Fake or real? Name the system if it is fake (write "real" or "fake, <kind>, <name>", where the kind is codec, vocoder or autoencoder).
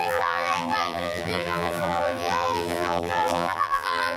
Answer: fake, vocoder, BigVGAN v2